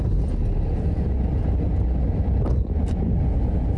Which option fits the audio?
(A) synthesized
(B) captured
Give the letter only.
B